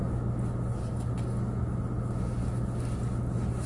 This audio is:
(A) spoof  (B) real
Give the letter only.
B